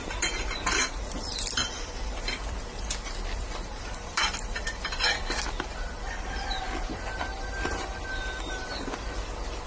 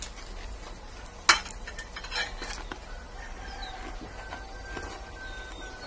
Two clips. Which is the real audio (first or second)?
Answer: second